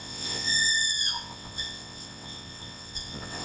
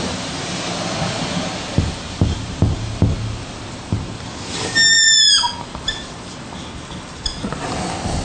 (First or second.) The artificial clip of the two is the first